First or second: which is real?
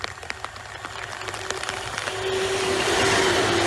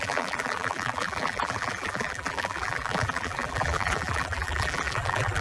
first